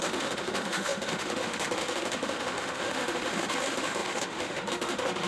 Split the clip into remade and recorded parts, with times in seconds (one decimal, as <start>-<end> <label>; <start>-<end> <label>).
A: 0.0-5.3 remade